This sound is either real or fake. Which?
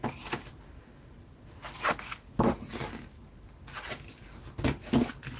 real